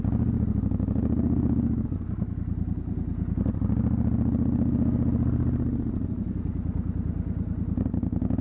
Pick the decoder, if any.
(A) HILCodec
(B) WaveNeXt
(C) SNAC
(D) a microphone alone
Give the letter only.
D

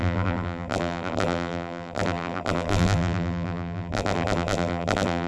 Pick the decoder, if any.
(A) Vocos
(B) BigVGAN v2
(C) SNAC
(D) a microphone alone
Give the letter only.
B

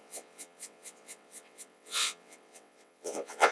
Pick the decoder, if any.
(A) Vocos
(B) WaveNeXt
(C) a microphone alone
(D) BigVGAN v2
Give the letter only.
B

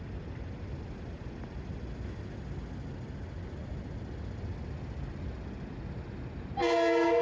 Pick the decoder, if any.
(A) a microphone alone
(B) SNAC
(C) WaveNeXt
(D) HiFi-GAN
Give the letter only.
A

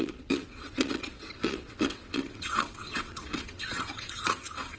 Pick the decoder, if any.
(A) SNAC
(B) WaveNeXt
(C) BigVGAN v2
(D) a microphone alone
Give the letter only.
B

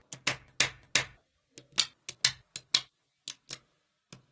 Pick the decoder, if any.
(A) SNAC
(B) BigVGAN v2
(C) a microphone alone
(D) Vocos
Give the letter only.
C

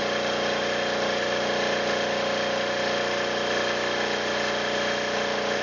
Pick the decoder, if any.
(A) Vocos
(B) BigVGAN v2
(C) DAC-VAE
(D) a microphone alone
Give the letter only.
D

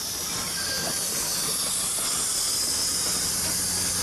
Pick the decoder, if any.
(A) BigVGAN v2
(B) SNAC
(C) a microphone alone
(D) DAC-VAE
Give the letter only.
C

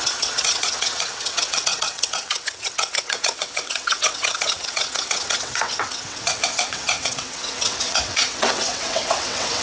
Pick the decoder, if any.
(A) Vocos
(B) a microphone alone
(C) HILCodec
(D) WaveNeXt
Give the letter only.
D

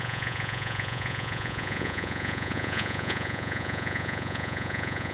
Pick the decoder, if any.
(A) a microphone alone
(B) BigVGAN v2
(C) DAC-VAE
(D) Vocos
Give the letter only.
D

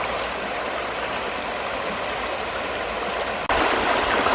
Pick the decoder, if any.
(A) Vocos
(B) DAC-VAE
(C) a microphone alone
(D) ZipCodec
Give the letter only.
C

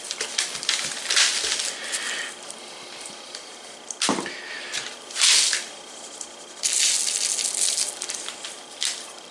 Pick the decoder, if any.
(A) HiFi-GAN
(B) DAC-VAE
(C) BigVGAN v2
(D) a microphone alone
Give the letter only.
D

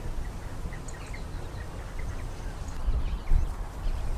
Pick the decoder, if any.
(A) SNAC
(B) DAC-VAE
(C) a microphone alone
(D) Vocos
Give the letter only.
C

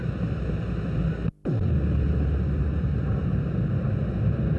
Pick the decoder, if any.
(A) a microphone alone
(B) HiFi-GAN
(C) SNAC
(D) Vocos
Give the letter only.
A